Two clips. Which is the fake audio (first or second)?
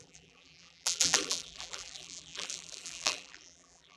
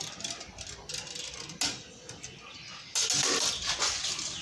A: first